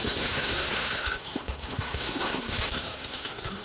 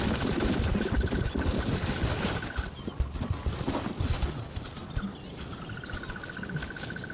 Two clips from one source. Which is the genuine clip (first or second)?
second